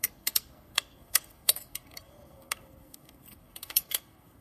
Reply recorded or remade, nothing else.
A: remade